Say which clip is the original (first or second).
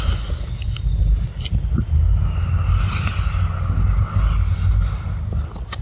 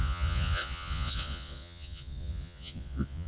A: first